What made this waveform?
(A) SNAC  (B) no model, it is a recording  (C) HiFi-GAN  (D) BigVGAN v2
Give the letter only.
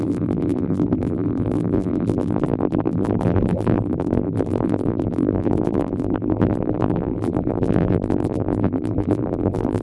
D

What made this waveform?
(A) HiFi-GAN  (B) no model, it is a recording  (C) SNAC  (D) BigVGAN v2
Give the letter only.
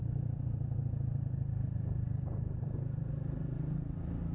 D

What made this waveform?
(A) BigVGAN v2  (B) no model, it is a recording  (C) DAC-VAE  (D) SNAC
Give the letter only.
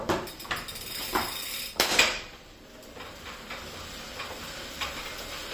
A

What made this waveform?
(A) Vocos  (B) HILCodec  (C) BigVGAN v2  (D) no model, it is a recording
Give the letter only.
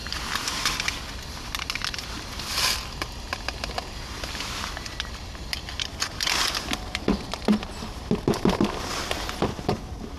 D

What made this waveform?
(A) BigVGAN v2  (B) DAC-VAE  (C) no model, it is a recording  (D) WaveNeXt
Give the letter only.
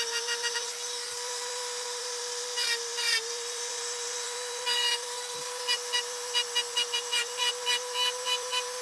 A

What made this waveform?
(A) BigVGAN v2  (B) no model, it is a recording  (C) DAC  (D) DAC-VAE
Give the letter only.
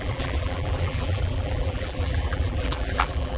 A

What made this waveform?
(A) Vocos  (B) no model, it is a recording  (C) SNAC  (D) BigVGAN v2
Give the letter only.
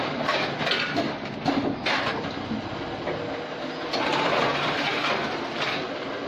B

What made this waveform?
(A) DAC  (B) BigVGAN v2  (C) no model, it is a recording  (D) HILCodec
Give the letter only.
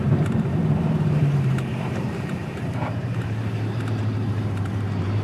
B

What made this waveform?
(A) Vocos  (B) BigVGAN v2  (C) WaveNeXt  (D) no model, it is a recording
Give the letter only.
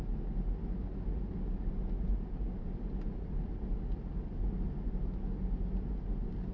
D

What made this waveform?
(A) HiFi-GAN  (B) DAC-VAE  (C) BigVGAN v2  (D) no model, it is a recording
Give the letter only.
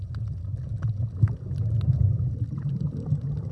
D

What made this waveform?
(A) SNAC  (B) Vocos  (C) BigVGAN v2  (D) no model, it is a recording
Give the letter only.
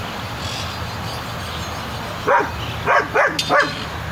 D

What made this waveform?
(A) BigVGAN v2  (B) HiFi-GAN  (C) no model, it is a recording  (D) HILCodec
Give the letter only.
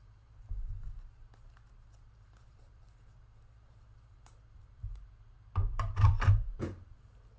A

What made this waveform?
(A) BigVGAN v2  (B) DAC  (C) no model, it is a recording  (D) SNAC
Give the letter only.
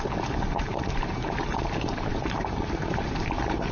A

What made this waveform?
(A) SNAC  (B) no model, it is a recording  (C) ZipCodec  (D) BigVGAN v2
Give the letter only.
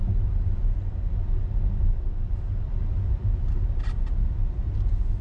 B